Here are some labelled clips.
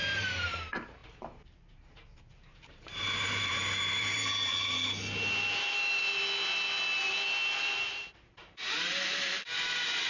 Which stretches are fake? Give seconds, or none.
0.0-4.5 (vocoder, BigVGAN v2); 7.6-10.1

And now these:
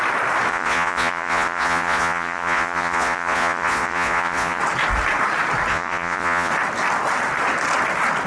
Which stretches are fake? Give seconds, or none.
0.5-4.6 (vocoder, Vocos); 5.7-6.5